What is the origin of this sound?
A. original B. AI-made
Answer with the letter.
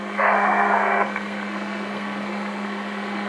B